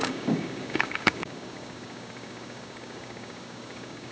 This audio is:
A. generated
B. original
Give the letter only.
A